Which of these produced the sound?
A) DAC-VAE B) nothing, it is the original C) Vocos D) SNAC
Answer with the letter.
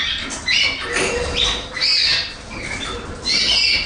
B